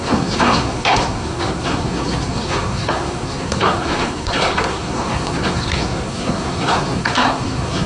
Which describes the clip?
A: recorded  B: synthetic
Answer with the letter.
B